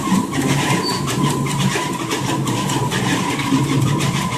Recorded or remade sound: recorded